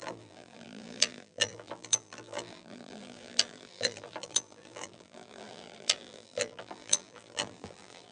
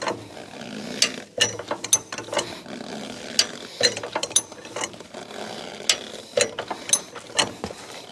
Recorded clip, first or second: second